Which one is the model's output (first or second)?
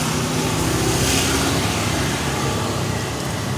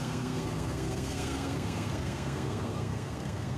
second